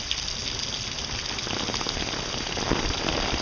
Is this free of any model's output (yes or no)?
yes